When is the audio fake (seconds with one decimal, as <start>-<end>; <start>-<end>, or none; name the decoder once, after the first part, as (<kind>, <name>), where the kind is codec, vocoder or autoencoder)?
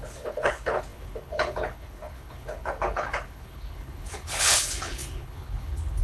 0.0-6.0 (codec, HILCodec)